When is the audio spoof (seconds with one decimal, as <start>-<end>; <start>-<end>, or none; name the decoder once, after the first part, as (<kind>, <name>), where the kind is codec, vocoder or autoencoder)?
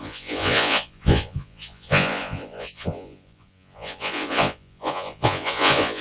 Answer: 0.0-6.0 (vocoder, Vocos)